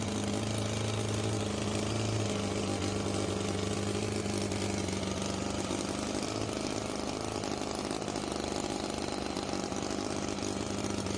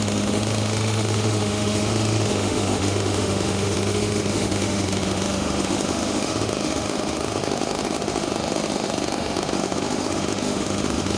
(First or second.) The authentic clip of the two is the first